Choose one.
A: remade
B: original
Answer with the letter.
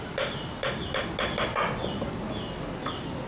B